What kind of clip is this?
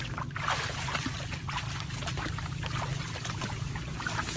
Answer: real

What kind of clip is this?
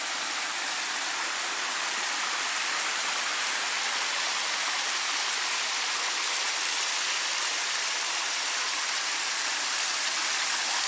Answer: real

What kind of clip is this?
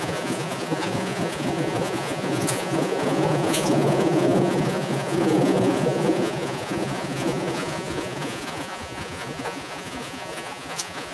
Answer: fake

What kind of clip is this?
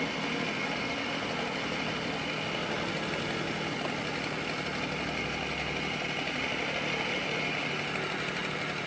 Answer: real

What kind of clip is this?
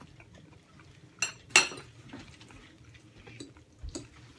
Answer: real